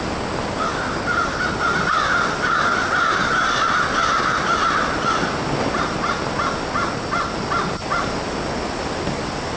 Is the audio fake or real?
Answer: real